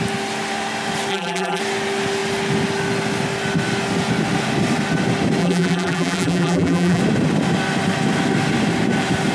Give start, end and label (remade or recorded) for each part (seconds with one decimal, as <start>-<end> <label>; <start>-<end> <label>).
0.0-1.1 recorded; 1.1-1.6 remade; 1.6-5.4 recorded; 5.4-7.0 remade; 7.0-9.3 recorded